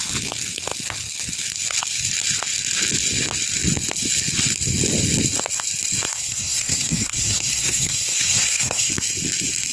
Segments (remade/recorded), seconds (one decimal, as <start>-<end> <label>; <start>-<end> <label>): 0.0-6.1 recorded; 6.1-8.9 remade; 8.9-9.7 recorded